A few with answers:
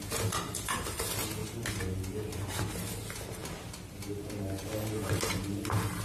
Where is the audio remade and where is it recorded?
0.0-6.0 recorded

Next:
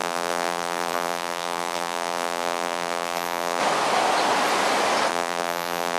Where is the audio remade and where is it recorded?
0.0-3.6 remade; 3.6-5.1 recorded; 5.1-6.0 remade

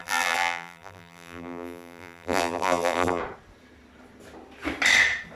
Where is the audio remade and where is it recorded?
0.0-3.2 remade; 3.2-5.4 recorded

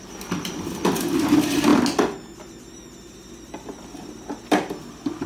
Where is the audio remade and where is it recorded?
0.0-5.3 recorded

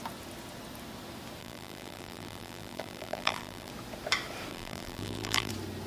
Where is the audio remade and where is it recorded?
0.0-1.4 recorded; 1.4-3.7 remade; 3.7-4.5 recorded; 4.5-5.5 remade; 5.5-5.9 recorded

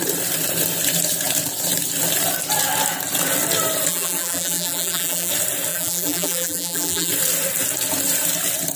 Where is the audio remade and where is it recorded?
0.0-3.9 recorded; 3.9-5.3 remade; 5.3-5.7 recorded; 5.7-7.1 remade; 7.1-8.8 recorded